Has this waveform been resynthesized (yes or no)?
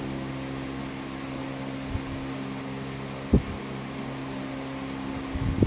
no